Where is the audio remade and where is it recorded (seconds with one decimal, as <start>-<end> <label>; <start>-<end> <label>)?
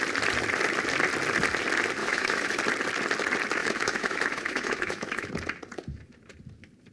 0.0-2.0 recorded; 2.0-2.6 remade; 2.6-3.6 recorded; 3.6-5.3 remade; 5.3-6.9 recorded